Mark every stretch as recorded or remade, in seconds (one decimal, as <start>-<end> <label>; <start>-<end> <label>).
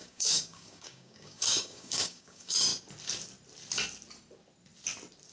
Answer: 0.0-2.7 remade; 2.7-5.3 recorded